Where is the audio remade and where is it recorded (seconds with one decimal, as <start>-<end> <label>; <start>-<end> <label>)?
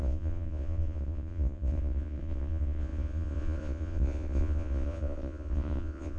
0.0-6.2 remade